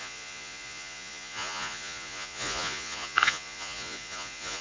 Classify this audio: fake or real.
fake